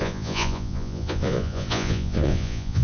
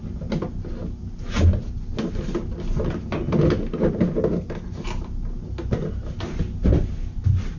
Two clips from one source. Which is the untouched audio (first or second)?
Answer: second